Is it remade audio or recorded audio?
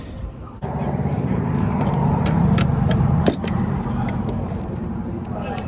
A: remade